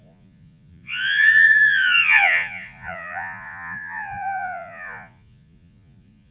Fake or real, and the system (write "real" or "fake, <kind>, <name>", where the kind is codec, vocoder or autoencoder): fake, vocoder, Vocos